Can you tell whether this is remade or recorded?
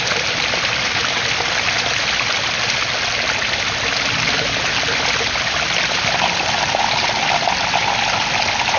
recorded